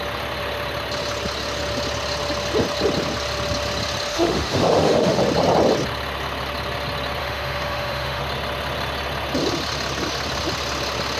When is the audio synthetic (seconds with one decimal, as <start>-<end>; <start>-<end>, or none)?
4.1-5.2; 7.2-8.2

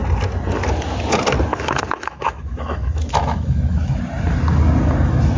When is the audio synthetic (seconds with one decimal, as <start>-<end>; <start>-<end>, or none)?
1.5-4.0

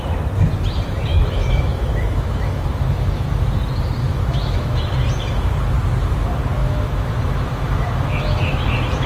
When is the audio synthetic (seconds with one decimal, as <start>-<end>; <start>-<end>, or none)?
1.1-3.4; 4.0-4.8; 6.6-8.6

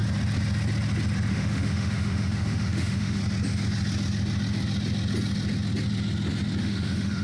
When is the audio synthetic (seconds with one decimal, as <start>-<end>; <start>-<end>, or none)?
1.3-3.2; 6.6-7.2

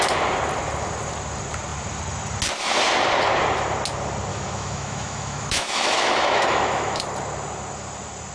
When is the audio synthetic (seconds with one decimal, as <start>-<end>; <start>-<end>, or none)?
4.3-7.0

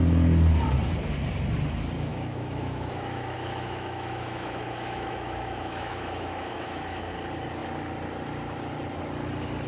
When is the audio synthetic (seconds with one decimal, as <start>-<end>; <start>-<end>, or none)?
2.1-7.1

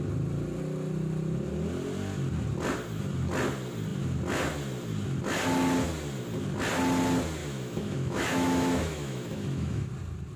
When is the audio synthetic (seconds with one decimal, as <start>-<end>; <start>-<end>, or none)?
7.4-9.9